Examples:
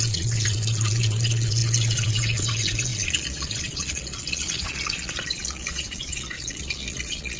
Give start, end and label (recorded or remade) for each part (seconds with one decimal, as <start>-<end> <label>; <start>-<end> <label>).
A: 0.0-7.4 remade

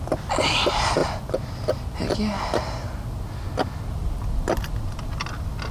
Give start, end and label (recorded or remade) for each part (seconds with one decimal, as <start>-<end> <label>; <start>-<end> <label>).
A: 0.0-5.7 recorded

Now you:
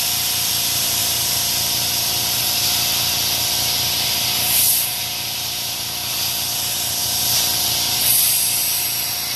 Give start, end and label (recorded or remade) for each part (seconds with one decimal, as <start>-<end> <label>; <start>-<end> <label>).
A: 0.0-0.5 remade; 0.5-9.4 recorded

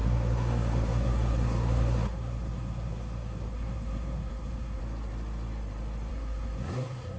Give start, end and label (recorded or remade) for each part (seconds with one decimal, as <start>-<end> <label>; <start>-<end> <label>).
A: 0.0-4.8 remade; 4.8-6.1 recorded; 6.1-7.2 remade